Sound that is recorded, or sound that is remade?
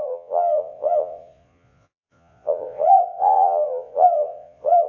remade